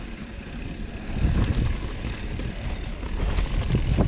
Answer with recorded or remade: remade